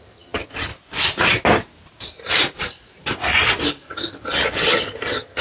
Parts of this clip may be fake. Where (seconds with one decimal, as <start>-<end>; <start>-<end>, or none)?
0.0-0.7; 3.9-5.4

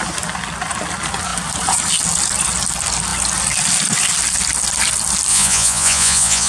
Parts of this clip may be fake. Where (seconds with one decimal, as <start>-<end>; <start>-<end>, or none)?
5.3-6.5